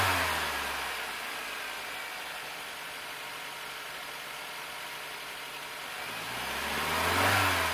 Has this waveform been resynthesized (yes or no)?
no